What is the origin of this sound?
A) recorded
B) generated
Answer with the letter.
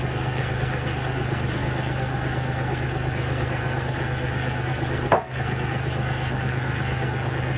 B